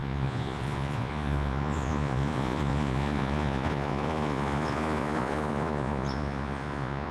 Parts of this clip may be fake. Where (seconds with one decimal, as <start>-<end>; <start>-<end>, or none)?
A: 0.0-7.1